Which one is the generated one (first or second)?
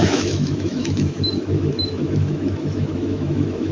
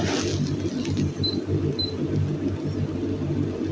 first